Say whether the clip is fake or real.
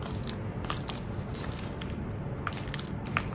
real